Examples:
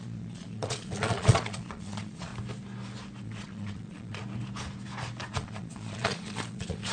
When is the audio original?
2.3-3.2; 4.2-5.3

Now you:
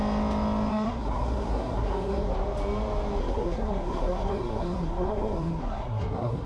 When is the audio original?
0.0-0.7; 2.3-3.2